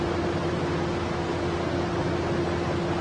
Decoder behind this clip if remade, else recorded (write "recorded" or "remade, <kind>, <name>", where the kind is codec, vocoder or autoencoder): recorded